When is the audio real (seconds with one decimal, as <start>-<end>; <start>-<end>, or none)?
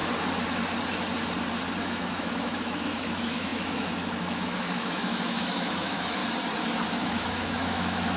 0.0-1.8; 6.2-6.9